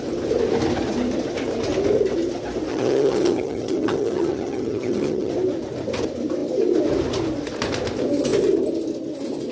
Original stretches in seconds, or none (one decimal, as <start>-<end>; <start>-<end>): 0.0-2.7; 5.3-9.5